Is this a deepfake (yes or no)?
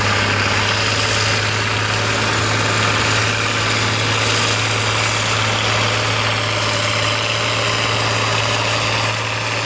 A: no